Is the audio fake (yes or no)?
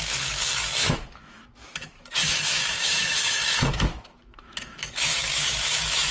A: yes